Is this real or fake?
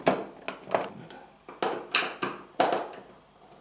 real